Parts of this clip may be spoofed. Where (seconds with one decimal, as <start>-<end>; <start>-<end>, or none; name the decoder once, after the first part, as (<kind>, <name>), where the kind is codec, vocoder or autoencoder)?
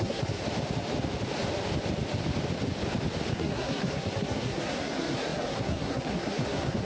0.0-0.4 (codec, SNAC); 3.3-6.8